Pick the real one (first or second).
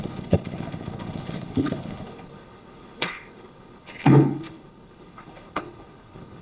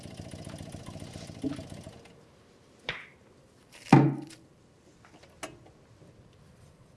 second